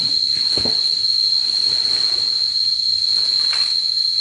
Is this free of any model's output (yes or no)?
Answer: yes